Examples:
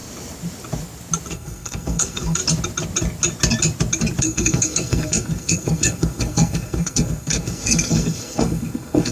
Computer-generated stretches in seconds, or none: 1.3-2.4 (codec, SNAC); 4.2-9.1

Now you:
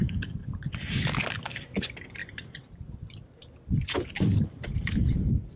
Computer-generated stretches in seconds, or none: none

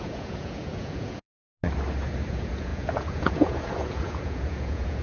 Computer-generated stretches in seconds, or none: 0.0-1.4 (vocoder, Vocos); 2.3-5.0